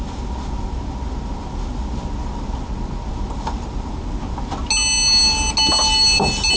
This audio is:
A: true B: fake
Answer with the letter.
A